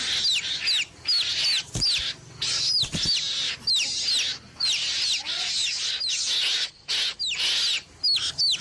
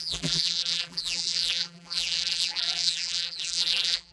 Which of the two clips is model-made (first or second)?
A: second